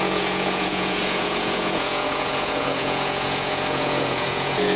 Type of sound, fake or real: fake